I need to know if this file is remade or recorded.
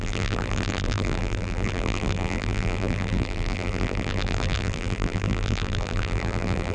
remade